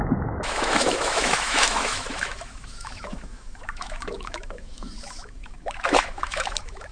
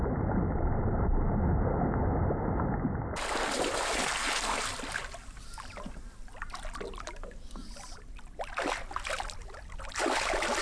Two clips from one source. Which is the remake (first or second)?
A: first